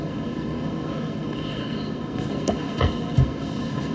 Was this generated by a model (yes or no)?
yes